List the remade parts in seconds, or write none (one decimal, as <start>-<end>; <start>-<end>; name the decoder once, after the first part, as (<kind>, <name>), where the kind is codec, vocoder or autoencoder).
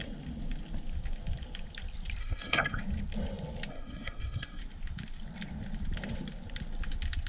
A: 2.2-2.8 (codec, SNAC); 3.7-4.6